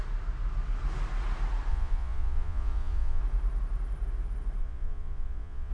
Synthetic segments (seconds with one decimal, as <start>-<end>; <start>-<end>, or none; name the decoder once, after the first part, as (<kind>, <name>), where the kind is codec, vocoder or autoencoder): 1.7-3.2 (vocoder, Vocos); 4.6-5.7